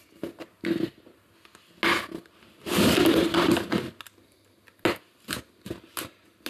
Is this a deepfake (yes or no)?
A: no